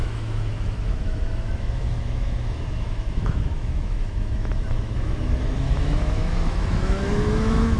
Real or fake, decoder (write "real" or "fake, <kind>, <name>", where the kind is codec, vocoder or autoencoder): fake, autoencoder, DAC-VAE